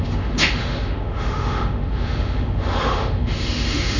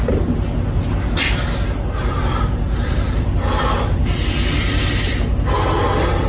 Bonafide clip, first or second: second